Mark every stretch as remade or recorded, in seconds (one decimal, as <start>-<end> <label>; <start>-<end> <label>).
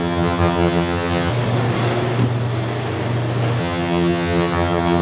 0.0-1.3 remade; 1.3-3.6 recorded; 3.6-5.0 remade